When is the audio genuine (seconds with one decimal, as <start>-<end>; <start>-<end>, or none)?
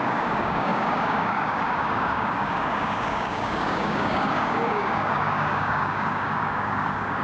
none